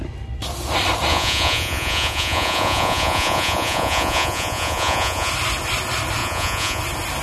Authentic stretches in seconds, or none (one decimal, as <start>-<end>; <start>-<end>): 0.0-1.1; 5.3-6.2; 6.8-7.2